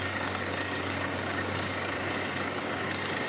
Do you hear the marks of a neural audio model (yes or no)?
yes